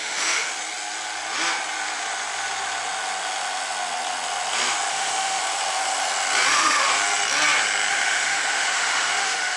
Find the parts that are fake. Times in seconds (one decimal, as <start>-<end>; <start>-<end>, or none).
0.0-0.5; 4.9-5.4; 6.5-6.9; 7.9-9.6